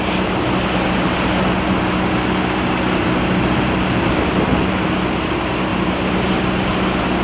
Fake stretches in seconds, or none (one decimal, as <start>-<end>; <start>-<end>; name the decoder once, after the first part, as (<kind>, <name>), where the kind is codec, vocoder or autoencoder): 5.7-6.4 (vocoder, BigVGAN v2)